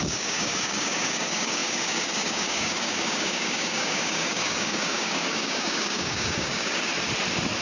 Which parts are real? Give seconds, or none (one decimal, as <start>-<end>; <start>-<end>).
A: 6.9-7.6